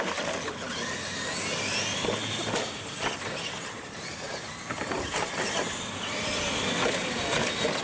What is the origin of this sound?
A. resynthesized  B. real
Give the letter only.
B